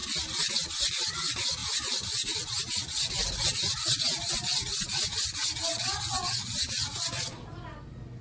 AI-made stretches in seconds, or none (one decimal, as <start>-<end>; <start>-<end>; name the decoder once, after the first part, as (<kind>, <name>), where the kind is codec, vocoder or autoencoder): none